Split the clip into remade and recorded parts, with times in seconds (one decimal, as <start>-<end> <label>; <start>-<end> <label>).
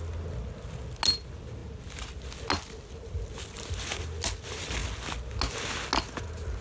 0.0-6.6 recorded